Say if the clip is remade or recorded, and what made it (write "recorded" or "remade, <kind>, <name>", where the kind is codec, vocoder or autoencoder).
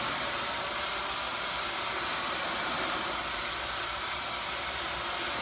recorded